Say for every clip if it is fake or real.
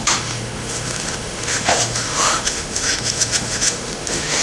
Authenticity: fake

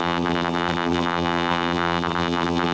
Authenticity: fake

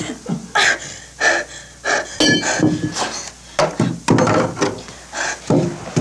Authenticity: real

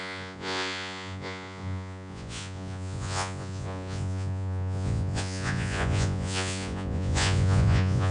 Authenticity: fake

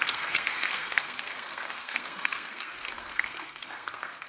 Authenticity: fake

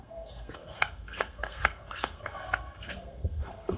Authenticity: fake